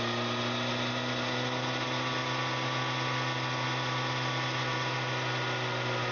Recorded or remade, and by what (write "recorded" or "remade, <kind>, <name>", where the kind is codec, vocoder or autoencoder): recorded